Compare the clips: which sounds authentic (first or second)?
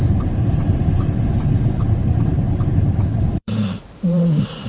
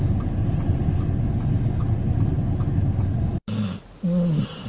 second